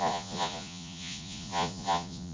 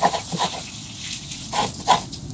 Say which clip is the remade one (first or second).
first